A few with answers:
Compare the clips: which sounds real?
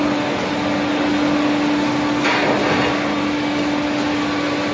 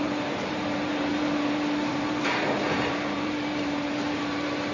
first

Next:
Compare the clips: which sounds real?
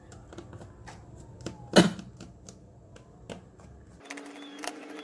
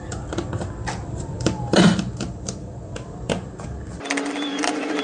first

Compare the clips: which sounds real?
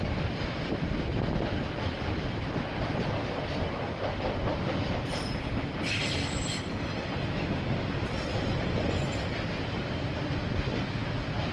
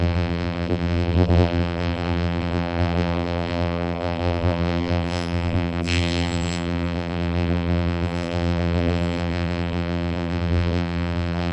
first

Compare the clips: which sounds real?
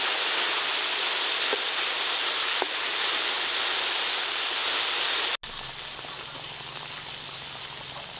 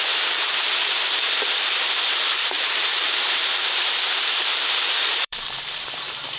first